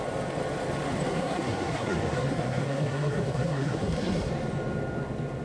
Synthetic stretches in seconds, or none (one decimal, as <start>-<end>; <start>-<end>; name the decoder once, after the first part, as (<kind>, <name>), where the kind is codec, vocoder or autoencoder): 1.1-4.3 (codec, SNAC)